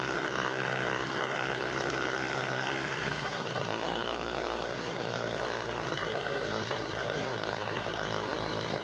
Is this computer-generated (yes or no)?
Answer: yes